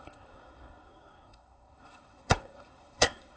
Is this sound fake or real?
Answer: fake